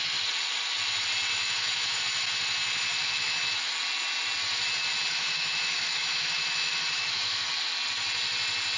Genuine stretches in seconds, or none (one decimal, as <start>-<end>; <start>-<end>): 0.0-1.3; 2.0-3.0; 3.7-5.1; 7.5-8.8